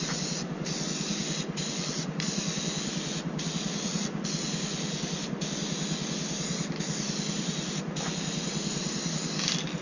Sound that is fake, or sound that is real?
real